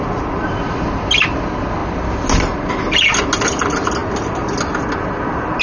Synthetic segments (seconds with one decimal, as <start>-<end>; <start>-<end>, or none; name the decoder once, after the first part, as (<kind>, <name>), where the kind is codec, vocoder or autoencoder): none